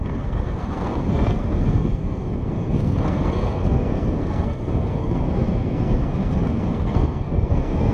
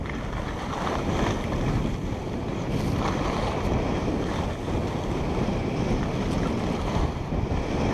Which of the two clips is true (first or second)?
second